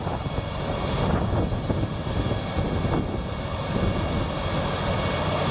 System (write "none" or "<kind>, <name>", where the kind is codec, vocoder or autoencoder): none